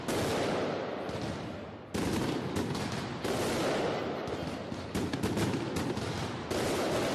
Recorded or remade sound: recorded